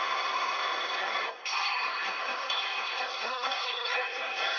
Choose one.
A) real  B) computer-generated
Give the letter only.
B